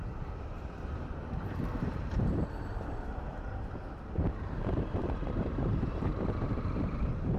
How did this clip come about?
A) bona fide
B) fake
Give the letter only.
B